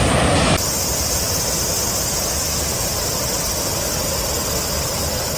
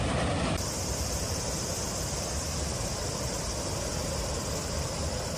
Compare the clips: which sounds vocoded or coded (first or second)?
second